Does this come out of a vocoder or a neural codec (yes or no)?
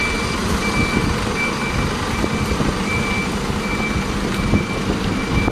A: no